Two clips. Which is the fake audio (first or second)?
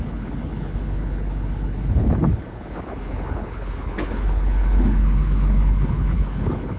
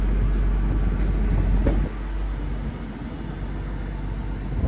first